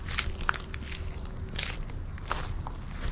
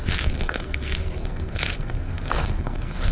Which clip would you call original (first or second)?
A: first